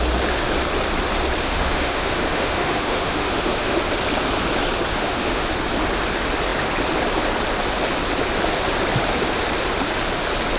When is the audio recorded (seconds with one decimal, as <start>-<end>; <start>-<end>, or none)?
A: 0.0-1.4; 3.8-4.9; 5.5-10.6